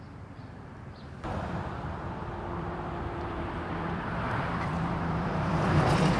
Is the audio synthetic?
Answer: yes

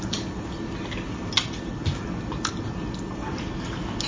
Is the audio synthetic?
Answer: no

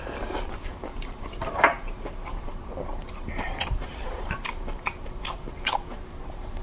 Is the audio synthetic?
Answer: yes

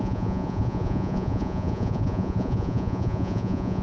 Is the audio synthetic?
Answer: yes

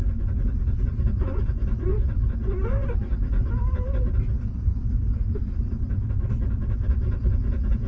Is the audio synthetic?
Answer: no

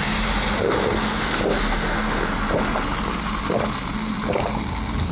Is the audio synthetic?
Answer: no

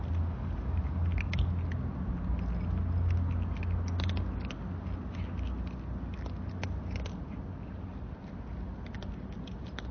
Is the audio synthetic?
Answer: no